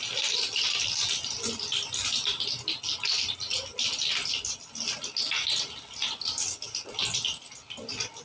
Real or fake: real